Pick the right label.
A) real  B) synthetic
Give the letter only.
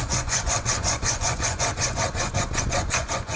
B